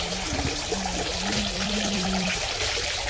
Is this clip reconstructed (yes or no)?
yes